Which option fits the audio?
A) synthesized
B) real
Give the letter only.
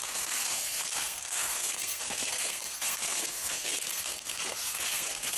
A